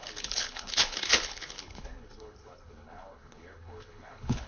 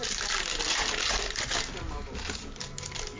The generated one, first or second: first